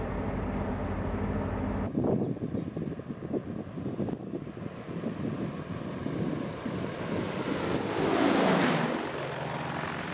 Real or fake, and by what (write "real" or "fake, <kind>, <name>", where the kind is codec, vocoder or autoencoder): real